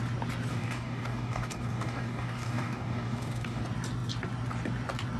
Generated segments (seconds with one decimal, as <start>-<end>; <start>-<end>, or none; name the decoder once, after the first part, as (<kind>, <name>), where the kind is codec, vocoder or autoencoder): 0.5-3.6 (codec, DAC)